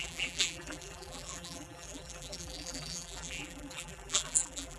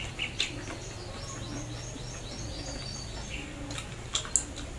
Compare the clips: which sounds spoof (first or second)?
first